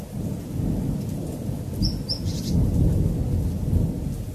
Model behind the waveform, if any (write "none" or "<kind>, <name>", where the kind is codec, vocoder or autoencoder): none